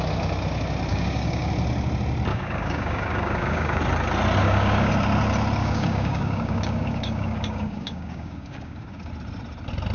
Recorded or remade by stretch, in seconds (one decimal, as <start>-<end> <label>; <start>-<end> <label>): 0.0-0.9 recorded; 0.9-1.5 remade; 1.5-2.3 recorded; 2.3-3.8 remade; 3.8-4.4 recorded; 4.4-4.9 remade; 4.9-5.6 recorded; 5.6-9.1 remade; 9.1-9.9 recorded